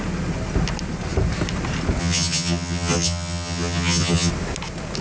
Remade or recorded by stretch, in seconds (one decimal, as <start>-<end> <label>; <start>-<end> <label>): 0.0-2.0 recorded; 2.0-4.3 remade; 4.3-5.0 recorded